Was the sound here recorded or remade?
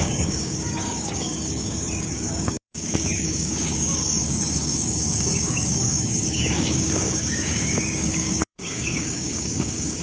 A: remade